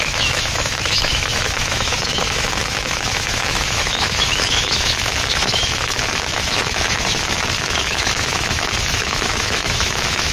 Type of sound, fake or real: fake